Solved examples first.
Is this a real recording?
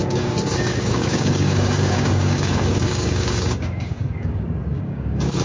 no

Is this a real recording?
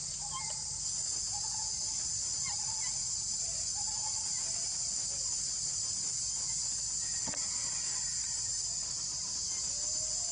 yes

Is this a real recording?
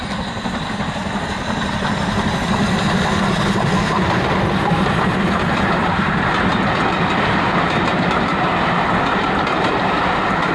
no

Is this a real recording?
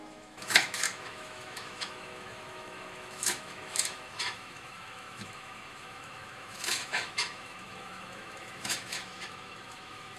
no